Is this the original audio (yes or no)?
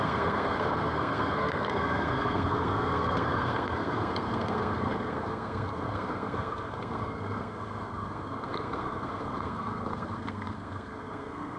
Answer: no